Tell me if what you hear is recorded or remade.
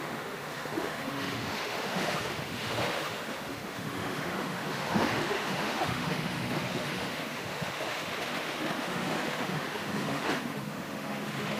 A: remade